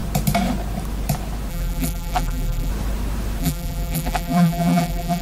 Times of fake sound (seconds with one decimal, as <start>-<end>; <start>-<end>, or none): 1.5-2.7; 3.4-5.2